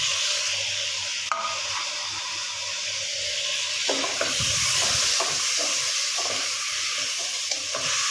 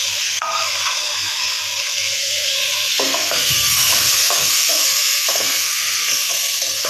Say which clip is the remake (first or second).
second